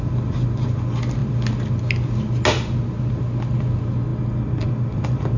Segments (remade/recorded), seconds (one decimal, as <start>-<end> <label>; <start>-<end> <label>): 0.0-4.1 recorded; 4.1-5.4 remade